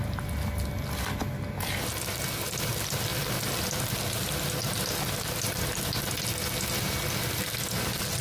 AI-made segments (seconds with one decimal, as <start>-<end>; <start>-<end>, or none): none